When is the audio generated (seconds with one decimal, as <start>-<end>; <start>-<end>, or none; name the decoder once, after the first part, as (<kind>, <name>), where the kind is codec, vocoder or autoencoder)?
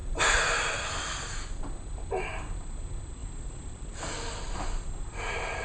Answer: 0.0-0.7 (vocoder, BigVGAN v2); 3.2-4.1